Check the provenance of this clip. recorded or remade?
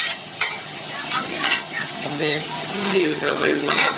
remade